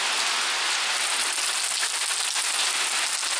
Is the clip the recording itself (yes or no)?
yes